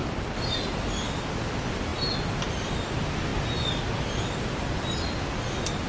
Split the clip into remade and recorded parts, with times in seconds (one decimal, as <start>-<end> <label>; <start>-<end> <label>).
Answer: 0.0-5.9 recorded